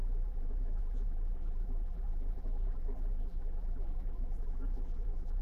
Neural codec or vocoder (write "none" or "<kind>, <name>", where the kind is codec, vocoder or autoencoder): vocoder, BigVGAN v2